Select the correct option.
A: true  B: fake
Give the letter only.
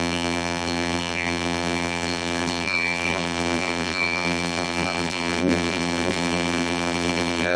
B